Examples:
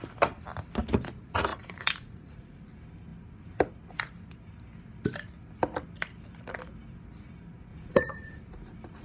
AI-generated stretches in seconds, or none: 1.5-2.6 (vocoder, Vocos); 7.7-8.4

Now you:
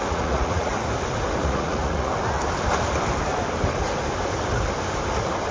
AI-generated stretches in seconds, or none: 0.0-0.7 (vocoder, Vocos); 1.4-2.1

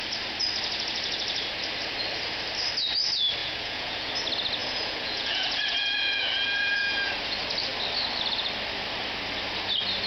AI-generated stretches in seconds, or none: 3.4-4.1 (vocoder, Vocos); 4.6-7.1

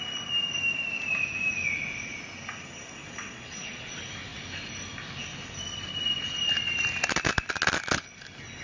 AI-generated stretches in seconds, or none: 3.0-3.9 (vocoder, Vocos)

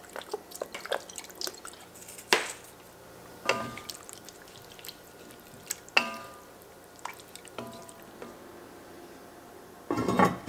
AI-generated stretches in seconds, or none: none

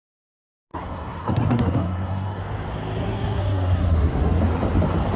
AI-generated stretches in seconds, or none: 0.7-2.4 (codec, SNAC); 3.0-4.4

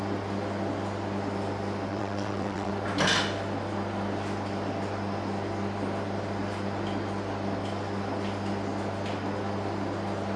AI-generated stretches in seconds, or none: 1.9-2.7 (vocoder, WaveNeXt)